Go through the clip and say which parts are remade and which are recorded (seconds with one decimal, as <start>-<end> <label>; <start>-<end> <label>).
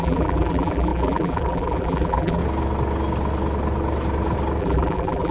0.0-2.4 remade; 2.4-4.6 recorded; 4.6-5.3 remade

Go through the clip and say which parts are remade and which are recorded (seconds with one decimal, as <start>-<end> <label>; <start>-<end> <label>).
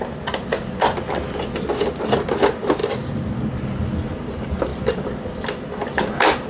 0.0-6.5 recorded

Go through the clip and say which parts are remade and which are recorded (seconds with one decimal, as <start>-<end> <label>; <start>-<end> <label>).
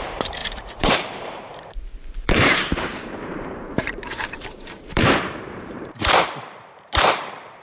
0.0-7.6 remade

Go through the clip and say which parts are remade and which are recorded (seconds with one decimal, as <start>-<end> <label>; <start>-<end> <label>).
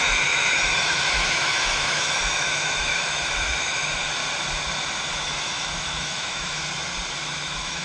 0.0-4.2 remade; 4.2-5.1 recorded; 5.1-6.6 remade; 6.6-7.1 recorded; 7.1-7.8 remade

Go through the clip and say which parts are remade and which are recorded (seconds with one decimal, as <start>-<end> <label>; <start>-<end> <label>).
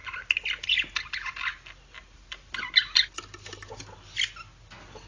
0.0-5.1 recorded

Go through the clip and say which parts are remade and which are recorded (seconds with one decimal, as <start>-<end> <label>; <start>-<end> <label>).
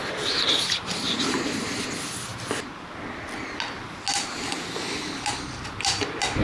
0.0-6.4 recorded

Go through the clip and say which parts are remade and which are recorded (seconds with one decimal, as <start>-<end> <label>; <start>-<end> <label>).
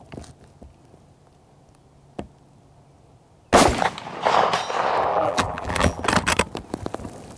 0.0-5.1 recorded; 5.1-6.0 remade; 6.0-7.4 recorded